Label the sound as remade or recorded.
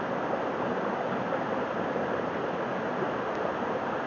recorded